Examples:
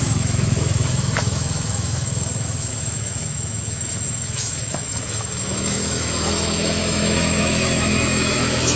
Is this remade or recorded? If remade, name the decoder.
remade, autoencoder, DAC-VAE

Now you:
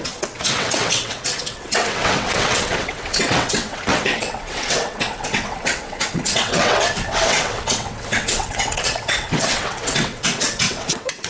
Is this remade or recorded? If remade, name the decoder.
remade, vocoder, WaveNeXt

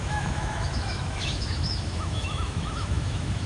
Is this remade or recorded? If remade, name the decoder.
remade, autoencoder, DAC-VAE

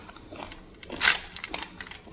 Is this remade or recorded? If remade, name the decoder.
recorded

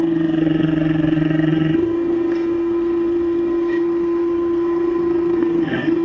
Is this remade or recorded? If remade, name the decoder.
remade, codec, SNAC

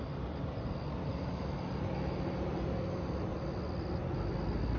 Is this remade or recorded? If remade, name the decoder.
recorded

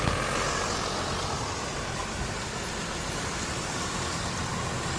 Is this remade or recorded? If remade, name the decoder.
recorded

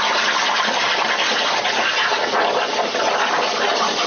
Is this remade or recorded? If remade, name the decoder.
recorded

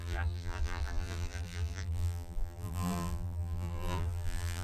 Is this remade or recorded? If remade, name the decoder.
remade, vocoder, BigVGAN v2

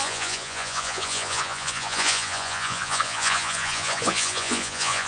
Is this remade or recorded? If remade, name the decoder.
remade, vocoder, Vocos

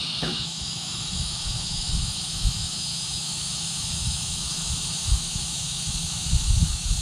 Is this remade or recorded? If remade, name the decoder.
remade, autoencoder, DAC-VAE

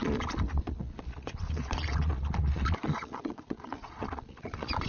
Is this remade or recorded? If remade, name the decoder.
remade, vocoder, Vocos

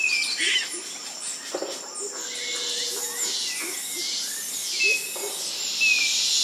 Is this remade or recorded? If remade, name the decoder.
recorded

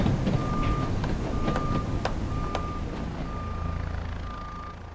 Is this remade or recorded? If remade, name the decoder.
recorded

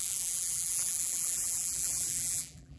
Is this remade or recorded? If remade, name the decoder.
remade, vocoder, BigVGAN v2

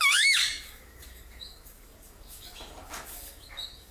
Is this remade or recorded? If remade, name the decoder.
remade, codec, DAC